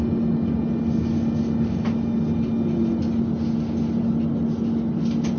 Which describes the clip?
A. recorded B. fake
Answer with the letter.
A